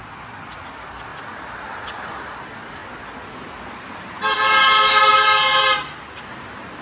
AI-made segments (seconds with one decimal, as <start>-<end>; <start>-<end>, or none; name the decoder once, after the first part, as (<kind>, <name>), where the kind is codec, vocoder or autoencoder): none